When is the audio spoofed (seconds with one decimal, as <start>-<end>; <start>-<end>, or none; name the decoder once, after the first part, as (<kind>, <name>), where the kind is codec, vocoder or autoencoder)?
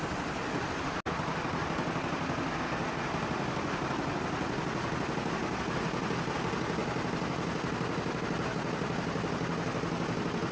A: none